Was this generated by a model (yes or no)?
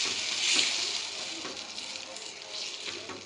no